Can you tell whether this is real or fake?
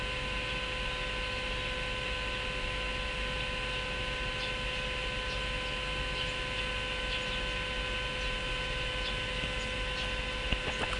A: real